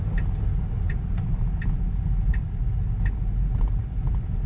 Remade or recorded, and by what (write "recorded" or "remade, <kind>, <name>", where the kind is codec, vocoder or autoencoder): recorded